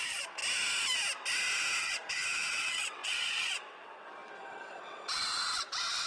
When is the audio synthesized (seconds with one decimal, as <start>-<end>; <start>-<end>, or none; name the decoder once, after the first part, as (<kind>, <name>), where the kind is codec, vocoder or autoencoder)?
0.0-0.4 (vocoder, WaveNeXt); 1.8-6.1